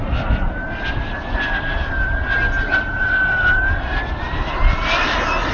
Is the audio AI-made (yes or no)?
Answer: no